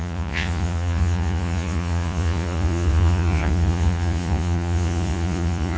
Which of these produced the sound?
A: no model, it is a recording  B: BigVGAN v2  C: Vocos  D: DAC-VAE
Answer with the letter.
C